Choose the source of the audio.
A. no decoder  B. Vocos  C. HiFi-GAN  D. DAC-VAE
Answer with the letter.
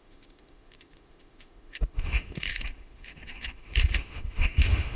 D